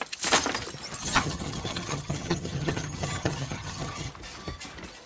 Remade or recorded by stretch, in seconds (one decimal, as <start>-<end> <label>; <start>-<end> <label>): 0.0-1.0 recorded; 1.0-4.1 remade; 4.1-5.1 recorded